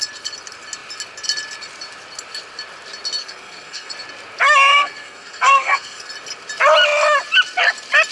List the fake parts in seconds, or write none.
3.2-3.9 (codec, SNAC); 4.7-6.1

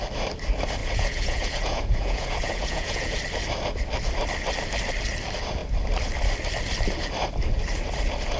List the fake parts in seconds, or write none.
0.8-3.2 (vocoder, Vocos)

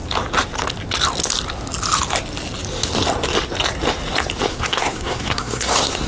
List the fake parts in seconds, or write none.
4.5-6.1 (codec, SNAC)

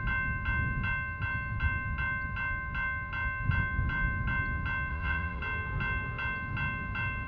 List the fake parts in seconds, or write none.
4.9-5.4 (vocoder, Vocos)

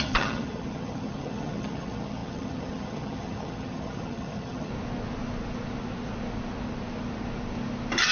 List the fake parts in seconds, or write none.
0.0-4.7 (vocoder, HiFi-GAN)

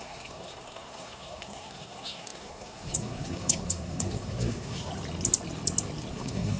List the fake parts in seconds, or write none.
0.0-4.9 (codec, SNAC); 6.1-6.6